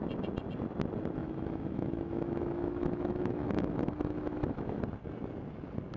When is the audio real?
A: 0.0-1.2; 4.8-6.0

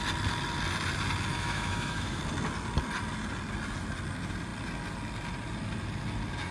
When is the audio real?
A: 0.0-1.3; 2.2-6.5

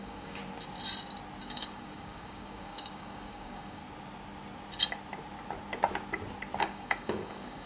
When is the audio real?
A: 0.4-1.4; 3.8-6.6

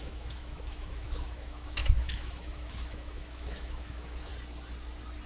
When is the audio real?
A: 4.3-5.3

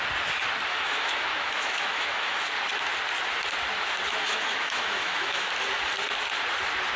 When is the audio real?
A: 0.0-0.7; 2.5-4.2; 5.5-7.0

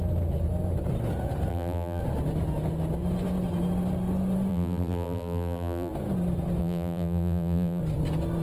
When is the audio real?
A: 0.0-1.5; 2.0-4.5; 5.9-6.6; 7.8-8.4

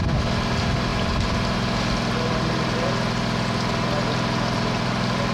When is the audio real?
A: 0.0-5.3